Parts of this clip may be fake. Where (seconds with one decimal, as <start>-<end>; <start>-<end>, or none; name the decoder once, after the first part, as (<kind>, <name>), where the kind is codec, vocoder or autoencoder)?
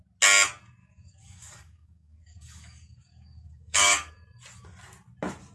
0.8-4.1 (codec, DAC)